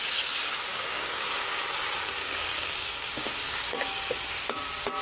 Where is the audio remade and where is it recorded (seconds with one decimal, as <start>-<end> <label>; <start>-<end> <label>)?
0.0-0.7 recorded; 0.7-1.6 remade; 1.6-2.2 recorded; 2.2-4.1 remade; 4.1-5.0 recorded